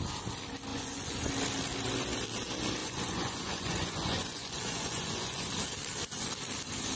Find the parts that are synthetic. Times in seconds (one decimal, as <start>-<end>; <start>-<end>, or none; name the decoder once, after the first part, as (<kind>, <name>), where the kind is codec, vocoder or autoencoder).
0.7-1.3 (vocoder, Vocos); 2.8-5.5